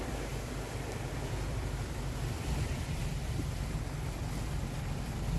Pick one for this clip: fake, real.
fake